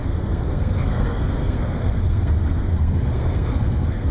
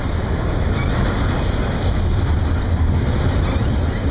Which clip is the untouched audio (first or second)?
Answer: second